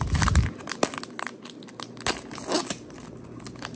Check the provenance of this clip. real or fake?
real